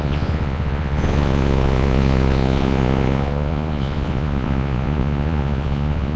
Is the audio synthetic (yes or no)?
yes